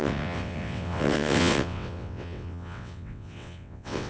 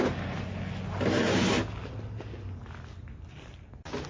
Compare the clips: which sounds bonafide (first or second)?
second